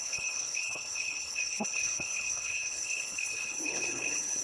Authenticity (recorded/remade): remade